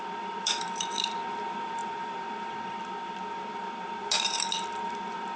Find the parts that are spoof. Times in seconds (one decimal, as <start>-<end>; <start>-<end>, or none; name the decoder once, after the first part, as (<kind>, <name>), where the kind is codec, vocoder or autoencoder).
0.0-5.4 (vocoder, BigVGAN v2)